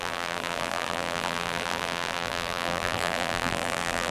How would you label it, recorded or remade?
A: remade